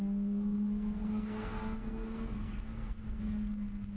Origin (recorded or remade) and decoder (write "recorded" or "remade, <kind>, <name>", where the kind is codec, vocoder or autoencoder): remade, codec, SNAC